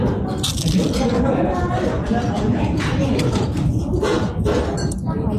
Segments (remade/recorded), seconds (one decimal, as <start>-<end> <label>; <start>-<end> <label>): 0.0-0.5 recorded; 0.5-3.7 remade; 3.7-5.4 recorded